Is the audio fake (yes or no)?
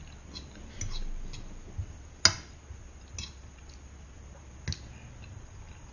no